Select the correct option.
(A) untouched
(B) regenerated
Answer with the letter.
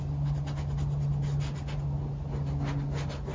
A